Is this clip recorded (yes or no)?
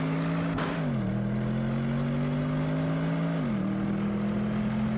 yes